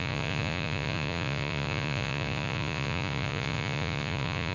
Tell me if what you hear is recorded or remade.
remade